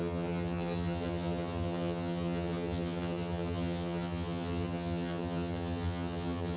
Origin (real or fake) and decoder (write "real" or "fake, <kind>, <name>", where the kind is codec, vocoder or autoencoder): fake, vocoder, HiFi-GAN